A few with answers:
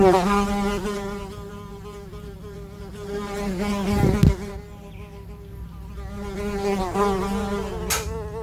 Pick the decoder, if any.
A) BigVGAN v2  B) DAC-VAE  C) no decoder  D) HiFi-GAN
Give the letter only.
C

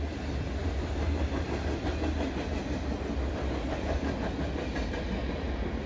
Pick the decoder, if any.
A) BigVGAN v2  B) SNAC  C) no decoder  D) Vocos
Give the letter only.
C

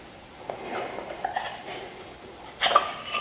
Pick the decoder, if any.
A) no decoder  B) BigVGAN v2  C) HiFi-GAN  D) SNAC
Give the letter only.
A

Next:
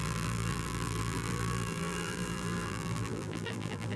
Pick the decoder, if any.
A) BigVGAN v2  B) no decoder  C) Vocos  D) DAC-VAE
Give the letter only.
A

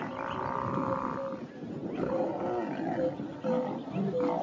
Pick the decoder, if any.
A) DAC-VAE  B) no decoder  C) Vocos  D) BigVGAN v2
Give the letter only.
B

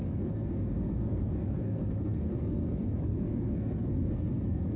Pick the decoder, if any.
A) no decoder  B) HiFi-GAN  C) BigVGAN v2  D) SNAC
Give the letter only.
D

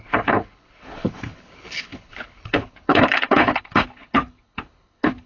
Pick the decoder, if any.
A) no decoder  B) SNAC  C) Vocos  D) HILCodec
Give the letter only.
D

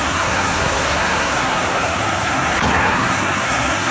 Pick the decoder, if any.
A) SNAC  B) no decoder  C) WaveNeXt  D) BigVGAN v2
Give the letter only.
A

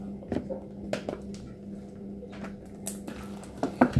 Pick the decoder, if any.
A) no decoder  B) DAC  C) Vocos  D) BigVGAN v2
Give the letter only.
A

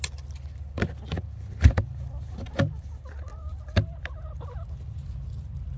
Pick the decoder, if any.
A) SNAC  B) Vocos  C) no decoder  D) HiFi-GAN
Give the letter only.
C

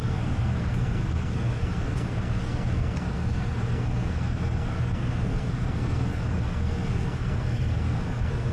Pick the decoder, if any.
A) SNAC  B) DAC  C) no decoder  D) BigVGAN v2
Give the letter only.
A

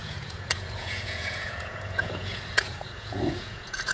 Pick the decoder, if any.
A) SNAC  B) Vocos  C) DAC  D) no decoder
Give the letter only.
B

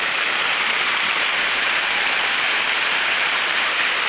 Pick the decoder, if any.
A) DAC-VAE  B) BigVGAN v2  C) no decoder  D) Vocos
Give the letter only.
B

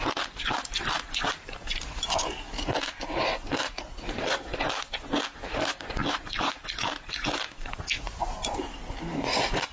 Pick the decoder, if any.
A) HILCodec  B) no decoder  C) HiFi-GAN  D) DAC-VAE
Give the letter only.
B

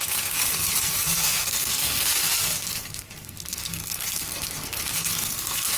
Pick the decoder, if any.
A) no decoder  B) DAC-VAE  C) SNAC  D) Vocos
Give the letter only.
C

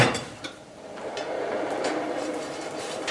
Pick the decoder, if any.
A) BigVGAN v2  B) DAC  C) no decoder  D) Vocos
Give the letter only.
A